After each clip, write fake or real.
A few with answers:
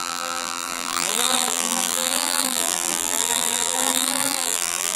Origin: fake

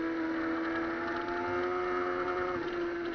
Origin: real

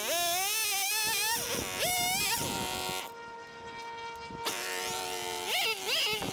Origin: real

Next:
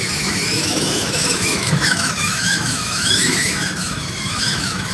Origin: fake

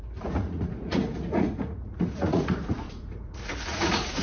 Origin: fake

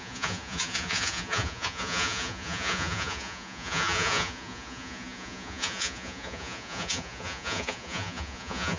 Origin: fake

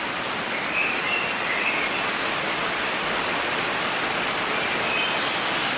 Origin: real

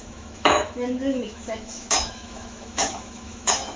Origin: fake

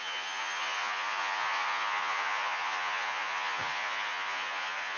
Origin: fake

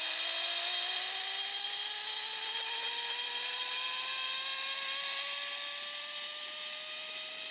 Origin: real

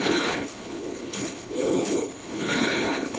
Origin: fake